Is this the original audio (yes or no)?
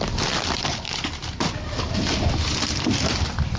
no